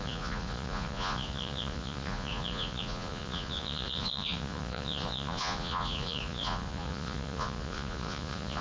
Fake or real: fake